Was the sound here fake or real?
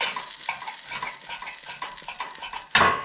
real